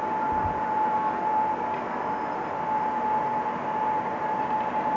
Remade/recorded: recorded